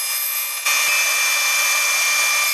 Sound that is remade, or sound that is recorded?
recorded